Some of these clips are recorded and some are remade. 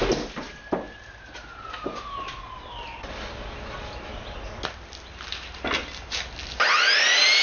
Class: recorded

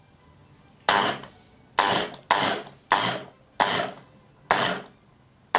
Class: recorded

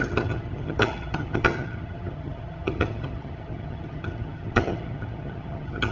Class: remade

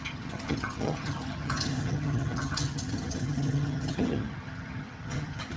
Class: remade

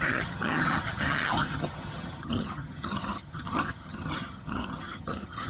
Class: remade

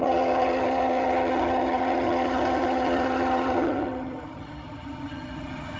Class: remade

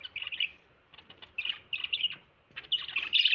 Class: recorded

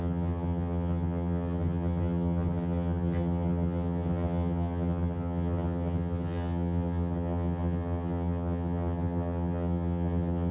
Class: remade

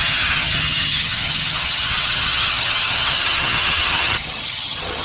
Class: remade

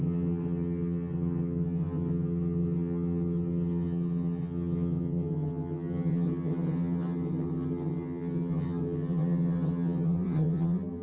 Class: remade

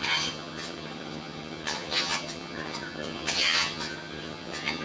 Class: remade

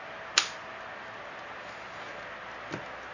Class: recorded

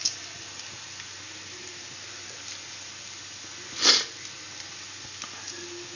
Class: recorded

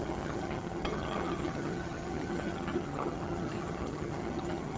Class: remade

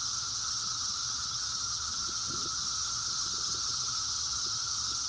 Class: remade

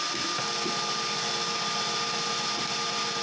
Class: recorded